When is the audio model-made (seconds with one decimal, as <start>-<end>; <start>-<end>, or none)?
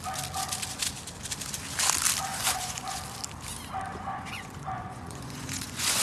2.3-3.0; 3.9-6.0